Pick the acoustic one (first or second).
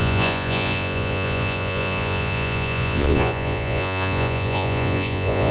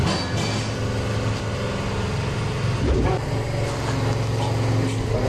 second